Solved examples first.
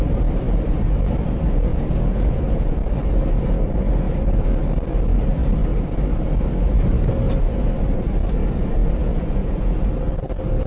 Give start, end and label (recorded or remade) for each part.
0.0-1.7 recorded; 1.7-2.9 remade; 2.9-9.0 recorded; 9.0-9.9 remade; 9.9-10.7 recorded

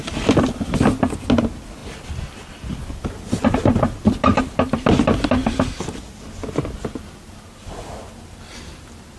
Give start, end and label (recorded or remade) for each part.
0.0-9.2 recorded